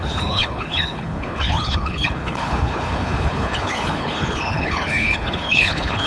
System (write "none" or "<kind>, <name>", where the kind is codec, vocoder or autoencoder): codec, HILCodec